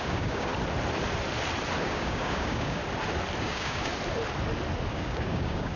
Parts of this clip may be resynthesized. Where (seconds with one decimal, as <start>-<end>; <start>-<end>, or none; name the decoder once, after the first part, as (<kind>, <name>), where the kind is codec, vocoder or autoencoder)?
0.0-0.5 (codec, DAC); 1.8-2.8; 3.4-3.9; 4.9-5.8